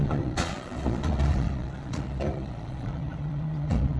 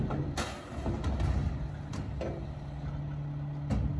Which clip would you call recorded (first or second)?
second